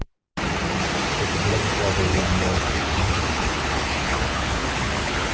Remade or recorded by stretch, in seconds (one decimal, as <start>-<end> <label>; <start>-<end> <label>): 0.0-2.1 recorded; 2.1-5.3 remade